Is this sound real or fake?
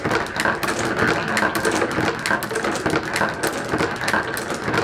real